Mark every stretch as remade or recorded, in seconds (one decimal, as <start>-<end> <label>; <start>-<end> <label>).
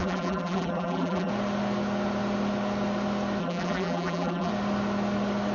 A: 0.0-1.3 remade; 1.3-3.4 recorded; 3.4-4.5 remade; 4.5-5.5 recorded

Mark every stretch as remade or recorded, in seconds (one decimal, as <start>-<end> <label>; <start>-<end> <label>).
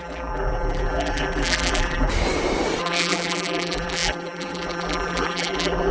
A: 0.0-2.1 remade; 2.1-2.8 recorded; 2.8-5.9 remade